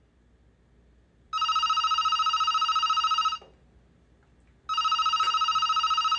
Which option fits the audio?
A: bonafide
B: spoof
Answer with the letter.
A